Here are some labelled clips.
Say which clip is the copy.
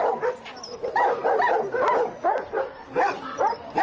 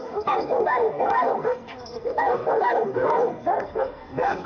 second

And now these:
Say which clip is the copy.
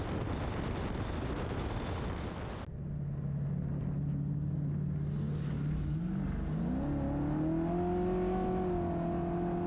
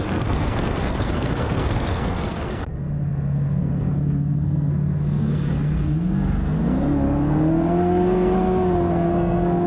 second